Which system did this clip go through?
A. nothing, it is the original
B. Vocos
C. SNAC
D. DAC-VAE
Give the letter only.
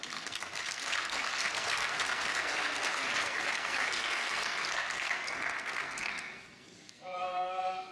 C